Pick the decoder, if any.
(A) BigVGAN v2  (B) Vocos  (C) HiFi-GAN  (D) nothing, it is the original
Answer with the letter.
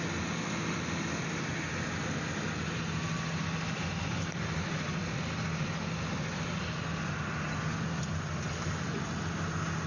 D